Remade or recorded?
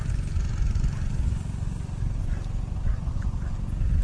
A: recorded